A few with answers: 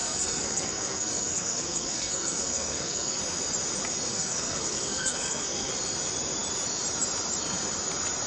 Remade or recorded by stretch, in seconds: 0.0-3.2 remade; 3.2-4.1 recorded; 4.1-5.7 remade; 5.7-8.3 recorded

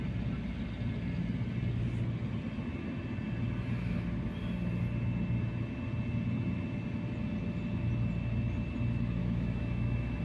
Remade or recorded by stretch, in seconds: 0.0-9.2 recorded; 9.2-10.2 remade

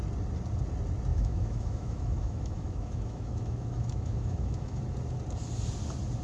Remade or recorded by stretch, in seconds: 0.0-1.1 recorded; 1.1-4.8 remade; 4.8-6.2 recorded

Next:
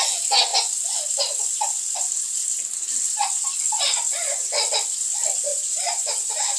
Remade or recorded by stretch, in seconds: 0.0-5.5 recorded; 5.5-6.6 remade

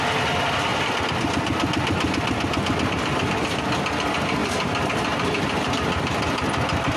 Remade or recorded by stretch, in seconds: 0.0-7.0 recorded

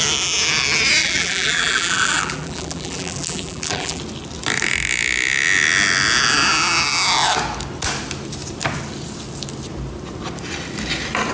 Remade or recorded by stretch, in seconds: 0.0-1.0 recorded; 1.0-4.0 remade; 4.0-11.3 recorded

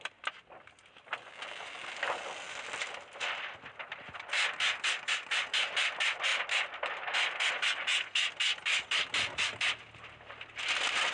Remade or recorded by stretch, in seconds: 0.0-11.1 recorded

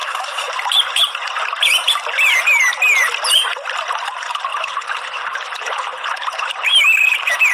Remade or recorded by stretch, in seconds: 0.0-0.5 remade; 0.5-7.5 recorded